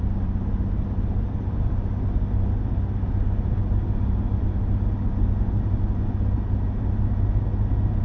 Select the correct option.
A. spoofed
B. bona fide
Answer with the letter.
B